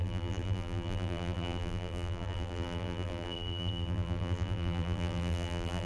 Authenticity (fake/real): fake